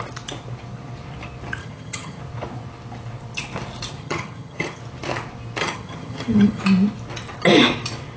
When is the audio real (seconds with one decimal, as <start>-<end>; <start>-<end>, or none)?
0.0-1.6; 2.2-4.0; 4.8-5.6; 6.6-8.2